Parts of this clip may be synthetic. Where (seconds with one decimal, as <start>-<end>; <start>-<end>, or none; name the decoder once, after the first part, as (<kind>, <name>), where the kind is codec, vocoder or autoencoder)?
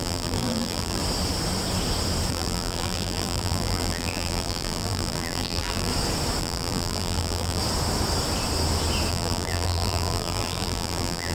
0.0-1.0 (vocoder, BigVGAN v2); 2.3-5.9; 6.4-7.6; 9.1-11.3